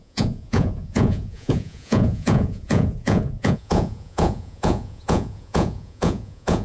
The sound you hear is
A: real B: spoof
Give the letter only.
B